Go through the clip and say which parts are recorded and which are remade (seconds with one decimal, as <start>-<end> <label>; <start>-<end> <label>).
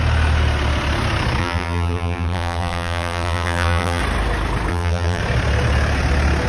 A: 0.0-1.4 recorded; 1.4-4.0 remade; 4.0-4.7 recorded; 4.7-5.2 remade; 5.2-6.5 recorded